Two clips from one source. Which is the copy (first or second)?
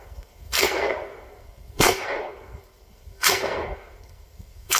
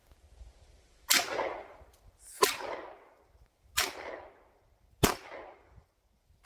first